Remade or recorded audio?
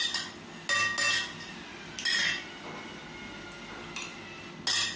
recorded